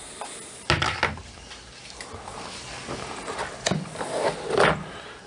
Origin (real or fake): real